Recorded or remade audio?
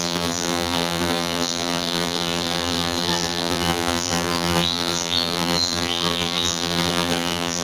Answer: remade